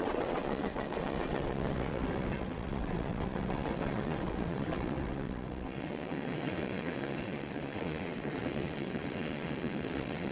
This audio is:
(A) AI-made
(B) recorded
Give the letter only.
A